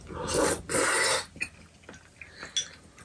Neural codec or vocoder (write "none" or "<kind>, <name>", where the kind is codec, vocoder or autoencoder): none